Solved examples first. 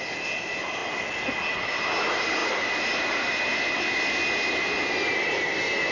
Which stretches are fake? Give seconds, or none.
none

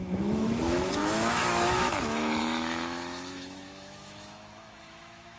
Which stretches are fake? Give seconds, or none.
0.0-5.4 (autoencoder, DAC-VAE)

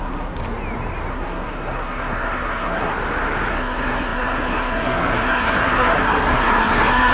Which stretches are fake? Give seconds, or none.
0.0-0.4 (codec, SNAC); 1.1-2.9; 3.5-7.1

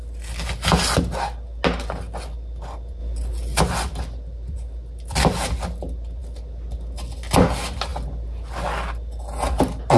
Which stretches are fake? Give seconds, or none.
none

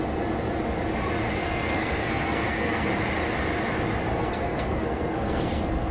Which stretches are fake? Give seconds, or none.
1.4-2.9 (codec, SNAC); 4.1-5.9

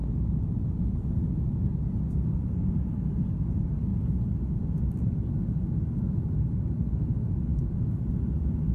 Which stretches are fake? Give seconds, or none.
7.5-8.1 (vocoder, BigVGAN v2)

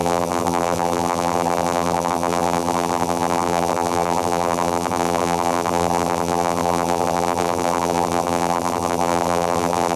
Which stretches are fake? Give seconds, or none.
0.0-10.0 (vocoder, BigVGAN v2)